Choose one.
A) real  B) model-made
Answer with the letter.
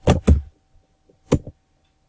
A